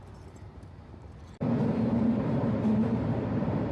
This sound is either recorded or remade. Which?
remade